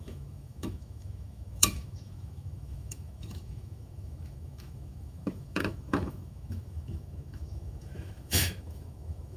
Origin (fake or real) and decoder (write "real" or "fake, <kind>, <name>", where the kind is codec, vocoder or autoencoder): fake, autoencoder, DAC-VAE